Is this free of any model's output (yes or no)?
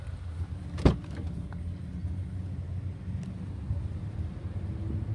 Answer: yes